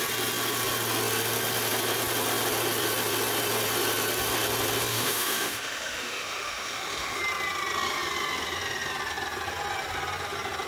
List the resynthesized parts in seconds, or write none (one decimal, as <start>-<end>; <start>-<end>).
4.9-7.2